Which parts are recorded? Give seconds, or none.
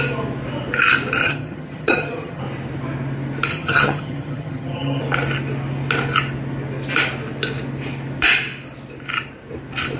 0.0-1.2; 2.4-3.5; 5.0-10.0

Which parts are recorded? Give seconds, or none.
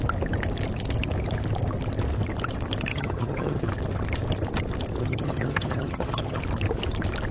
0.0-2.9; 3.7-5.0; 6.4-7.3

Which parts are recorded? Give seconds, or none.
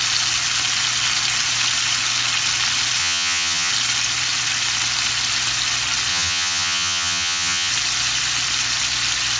0.0-3.0; 3.7-6.1; 7.7-9.4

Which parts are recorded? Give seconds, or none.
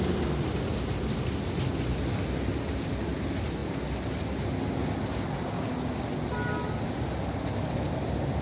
0.0-8.4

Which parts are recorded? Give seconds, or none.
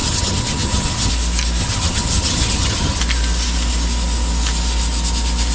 1.1-1.6; 3.0-5.5